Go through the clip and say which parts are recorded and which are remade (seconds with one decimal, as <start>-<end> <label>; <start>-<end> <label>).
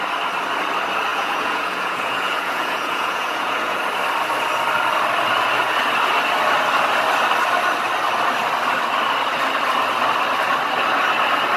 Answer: 0.0-1.1 recorded; 1.1-3.8 remade; 3.8-11.6 recorded